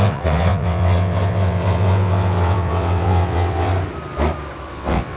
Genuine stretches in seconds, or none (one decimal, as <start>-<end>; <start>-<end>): 3.7-4.7